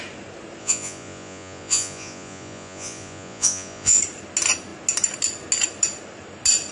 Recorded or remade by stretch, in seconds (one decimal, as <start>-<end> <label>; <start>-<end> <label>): 0.0-0.6 recorded; 0.6-4.0 remade; 4.0-6.7 recorded